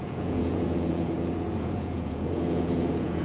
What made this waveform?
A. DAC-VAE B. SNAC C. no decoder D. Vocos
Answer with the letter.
D